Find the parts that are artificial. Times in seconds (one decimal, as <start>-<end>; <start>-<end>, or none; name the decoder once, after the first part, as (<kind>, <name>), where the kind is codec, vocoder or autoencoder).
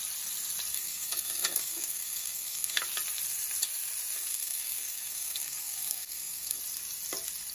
0.7-2.8 (codec, SNAC); 4.3-6.6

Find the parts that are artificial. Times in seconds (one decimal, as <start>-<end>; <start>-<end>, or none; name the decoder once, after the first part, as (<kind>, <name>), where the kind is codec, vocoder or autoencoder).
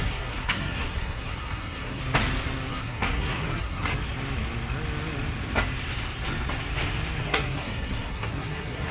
0.0-2.0 (codec, SNAC); 2.7-3.9; 7.2-8.9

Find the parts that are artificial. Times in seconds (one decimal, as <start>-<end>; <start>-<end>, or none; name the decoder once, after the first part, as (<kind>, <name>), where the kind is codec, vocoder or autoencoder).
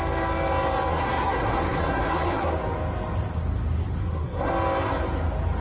0.9-2.5 (codec, SNAC); 4.0-4.5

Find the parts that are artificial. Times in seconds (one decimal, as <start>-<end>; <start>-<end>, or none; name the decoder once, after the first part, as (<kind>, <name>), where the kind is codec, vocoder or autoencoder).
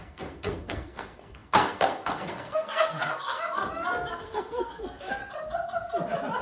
0.0-3.6 (codec, SNAC); 4.1-5.2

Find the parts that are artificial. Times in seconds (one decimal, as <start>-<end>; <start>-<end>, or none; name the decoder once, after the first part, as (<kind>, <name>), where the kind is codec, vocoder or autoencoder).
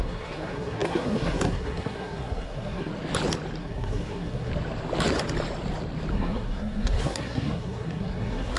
0.0-2.9 (codec, SNAC); 3.6-4.5; 6.1-8.6